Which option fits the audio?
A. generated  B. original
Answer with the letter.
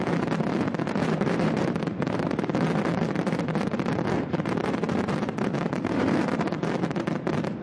A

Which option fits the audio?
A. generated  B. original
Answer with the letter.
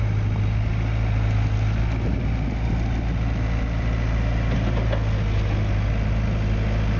B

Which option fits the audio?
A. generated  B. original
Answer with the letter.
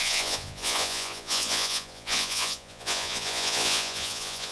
A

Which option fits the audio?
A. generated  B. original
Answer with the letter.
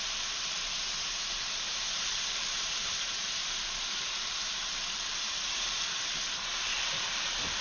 A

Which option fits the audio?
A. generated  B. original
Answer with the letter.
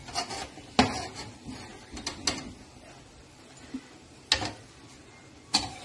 B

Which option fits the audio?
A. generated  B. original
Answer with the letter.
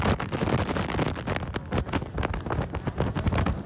B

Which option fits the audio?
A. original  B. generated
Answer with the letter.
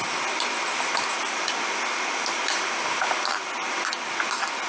A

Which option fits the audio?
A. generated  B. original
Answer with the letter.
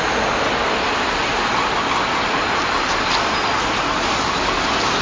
B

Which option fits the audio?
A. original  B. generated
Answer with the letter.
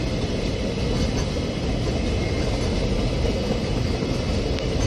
A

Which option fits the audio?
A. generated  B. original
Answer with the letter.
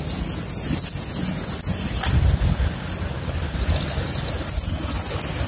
B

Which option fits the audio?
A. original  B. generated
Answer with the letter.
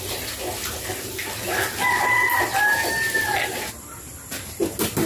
A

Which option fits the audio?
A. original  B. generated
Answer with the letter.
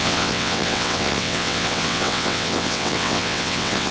B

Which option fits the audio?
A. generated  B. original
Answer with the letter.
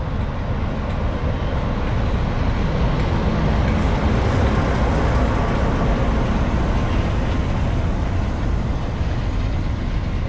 B